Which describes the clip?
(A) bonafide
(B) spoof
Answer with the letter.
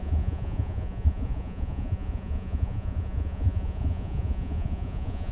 B